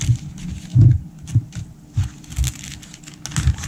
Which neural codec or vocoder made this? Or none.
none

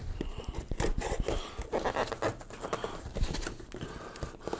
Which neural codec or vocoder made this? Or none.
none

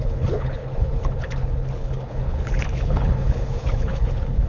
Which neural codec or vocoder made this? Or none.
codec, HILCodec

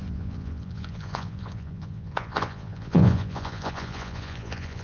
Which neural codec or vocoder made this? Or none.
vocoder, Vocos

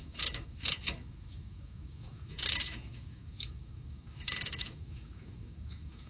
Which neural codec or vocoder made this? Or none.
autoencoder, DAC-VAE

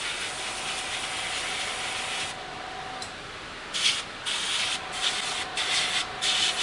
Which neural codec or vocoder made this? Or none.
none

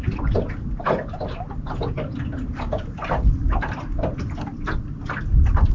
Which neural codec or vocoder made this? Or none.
none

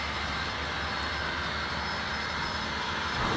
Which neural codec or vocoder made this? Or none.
vocoder, BigVGAN v2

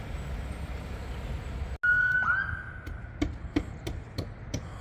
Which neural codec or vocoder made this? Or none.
none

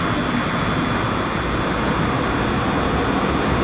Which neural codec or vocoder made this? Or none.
none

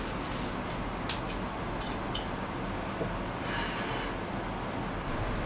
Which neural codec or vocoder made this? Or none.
none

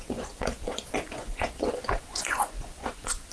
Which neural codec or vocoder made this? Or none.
vocoder, Vocos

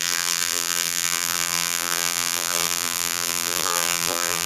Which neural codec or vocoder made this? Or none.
vocoder, BigVGAN v2